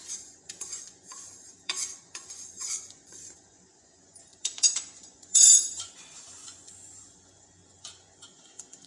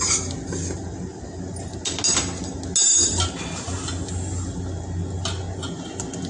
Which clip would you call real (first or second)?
second